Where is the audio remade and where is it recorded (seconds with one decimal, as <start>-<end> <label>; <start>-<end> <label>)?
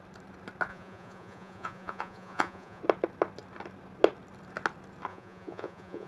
0.0-0.7 recorded; 0.7-2.8 remade; 2.8-5.1 recorded; 5.1-6.1 remade